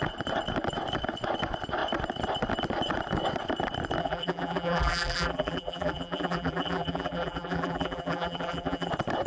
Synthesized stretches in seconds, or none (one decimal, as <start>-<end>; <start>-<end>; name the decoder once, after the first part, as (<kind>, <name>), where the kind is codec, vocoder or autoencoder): 4.0-8.9 (vocoder, BigVGAN v2)